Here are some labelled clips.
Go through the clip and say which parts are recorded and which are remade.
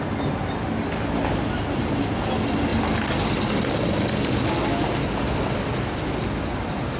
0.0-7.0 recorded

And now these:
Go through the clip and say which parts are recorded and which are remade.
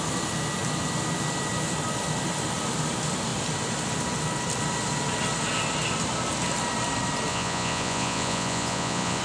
0.0-7.3 recorded; 7.3-9.2 remade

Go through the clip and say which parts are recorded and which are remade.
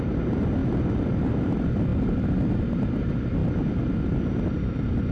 0.0-5.1 recorded